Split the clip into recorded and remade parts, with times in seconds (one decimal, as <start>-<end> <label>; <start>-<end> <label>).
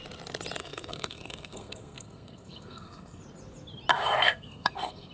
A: 0.0-0.6 recorded; 0.6-3.2 remade; 3.2-3.9 recorded; 3.9-5.1 remade